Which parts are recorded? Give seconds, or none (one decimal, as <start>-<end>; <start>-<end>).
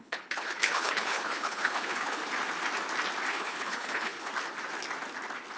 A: 2.2-3.3; 4.3-5.6